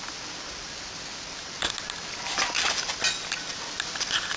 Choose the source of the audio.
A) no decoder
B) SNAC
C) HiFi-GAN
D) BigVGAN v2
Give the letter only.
A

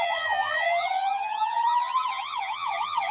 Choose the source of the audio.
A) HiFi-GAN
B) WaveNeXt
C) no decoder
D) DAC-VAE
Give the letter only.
A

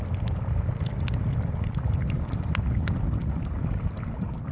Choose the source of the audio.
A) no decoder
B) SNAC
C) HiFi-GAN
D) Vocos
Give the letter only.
A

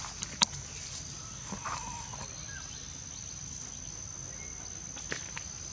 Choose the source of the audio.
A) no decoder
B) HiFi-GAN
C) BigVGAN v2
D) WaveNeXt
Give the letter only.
A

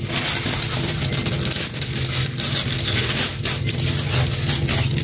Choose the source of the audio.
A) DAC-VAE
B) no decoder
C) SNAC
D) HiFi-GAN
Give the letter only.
B